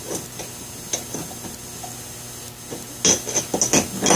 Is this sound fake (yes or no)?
no